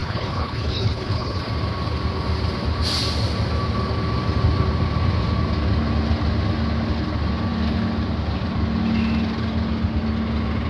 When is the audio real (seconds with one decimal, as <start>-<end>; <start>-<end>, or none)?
1.4-10.7